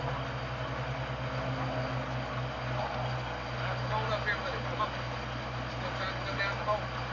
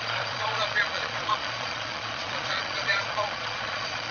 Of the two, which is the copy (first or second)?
second